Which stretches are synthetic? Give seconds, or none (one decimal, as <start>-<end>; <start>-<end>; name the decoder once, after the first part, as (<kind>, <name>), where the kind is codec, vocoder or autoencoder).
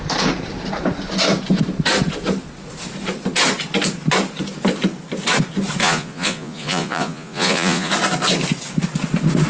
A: 5.8-7.9 (vocoder, Vocos)